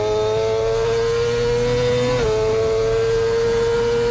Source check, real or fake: real